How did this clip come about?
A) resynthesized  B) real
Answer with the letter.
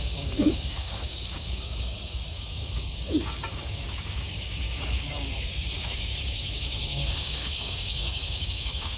A